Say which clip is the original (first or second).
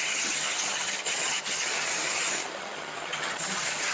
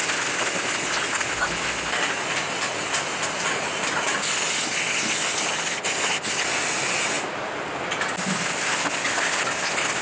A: second